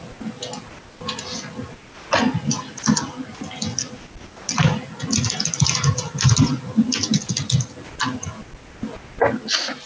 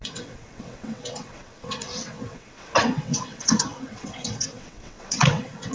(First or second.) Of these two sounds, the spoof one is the second